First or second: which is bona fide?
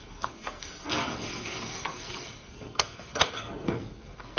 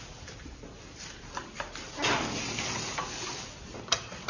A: second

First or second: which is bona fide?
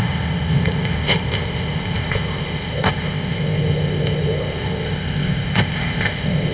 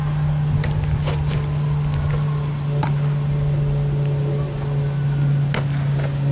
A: second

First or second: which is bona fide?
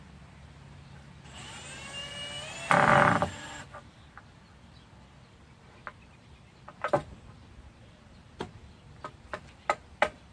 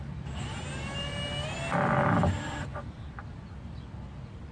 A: second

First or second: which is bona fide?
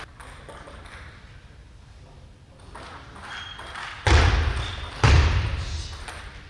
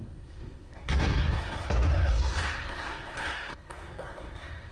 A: first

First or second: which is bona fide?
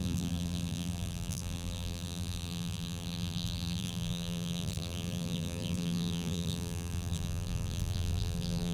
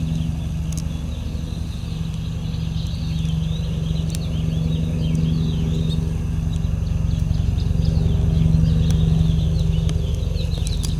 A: second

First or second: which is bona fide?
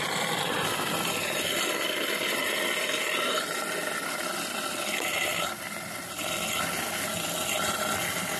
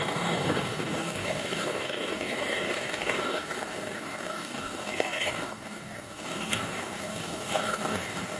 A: first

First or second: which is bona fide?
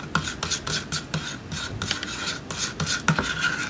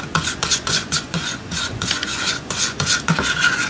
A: first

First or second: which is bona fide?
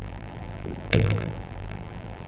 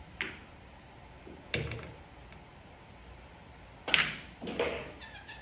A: second